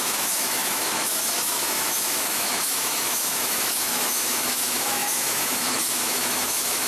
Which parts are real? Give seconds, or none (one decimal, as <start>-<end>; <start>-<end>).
none